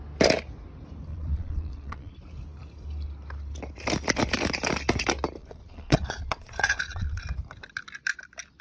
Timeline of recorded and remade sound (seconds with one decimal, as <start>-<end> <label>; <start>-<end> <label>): 0.0-1.1 recorded; 1.1-2.1 remade; 2.1-5.4 recorded; 5.4-7.2 remade; 7.2-8.6 recorded